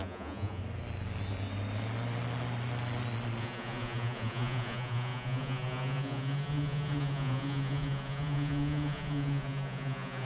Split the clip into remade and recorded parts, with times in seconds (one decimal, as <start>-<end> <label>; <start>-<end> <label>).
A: 0.0-0.6 remade; 0.6-3.4 recorded; 3.4-10.2 remade